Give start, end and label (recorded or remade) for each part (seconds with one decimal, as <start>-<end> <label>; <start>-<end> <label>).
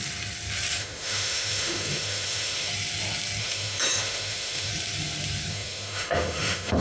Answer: 0.0-0.8 recorded; 0.8-2.7 remade; 2.7-3.4 recorded; 3.4-4.7 remade; 4.7-5.5 recorded; 5.5-6.8 remade